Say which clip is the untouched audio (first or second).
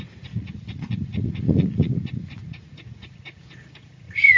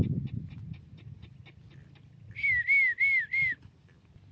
second